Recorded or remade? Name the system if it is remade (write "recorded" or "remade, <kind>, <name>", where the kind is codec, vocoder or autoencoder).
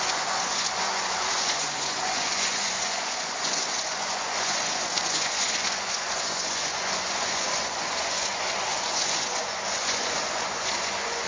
remade, vocoder, Vocos